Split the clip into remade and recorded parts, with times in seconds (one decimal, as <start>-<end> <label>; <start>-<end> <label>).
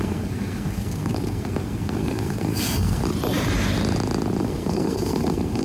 0.0-3.0 remade; 3.0-4.4 recorded; 4.4-5.6 remade